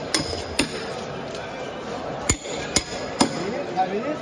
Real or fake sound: real